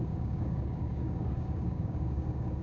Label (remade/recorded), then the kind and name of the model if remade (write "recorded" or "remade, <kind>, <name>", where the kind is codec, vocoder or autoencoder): remade, codec, DAC